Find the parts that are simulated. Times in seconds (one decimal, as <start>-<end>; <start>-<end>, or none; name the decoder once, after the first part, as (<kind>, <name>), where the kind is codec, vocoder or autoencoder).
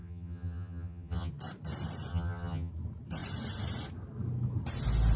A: 0.0-1.3 (vocoder, HiFi-GAN); 2.1-2.7